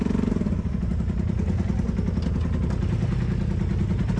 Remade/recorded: recorded